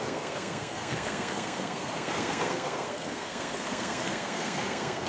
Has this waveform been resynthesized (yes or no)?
yes